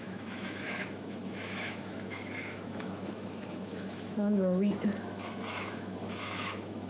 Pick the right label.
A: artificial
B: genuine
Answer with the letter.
A